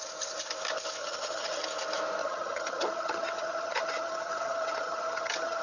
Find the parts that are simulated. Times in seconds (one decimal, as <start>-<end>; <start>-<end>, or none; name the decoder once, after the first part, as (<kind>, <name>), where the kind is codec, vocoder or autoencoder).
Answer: 1.0-1.6 (vocoder, HiFi-GAN); 2.2-5.6